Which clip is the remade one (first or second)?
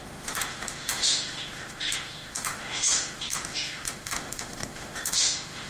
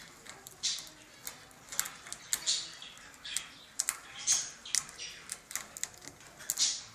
first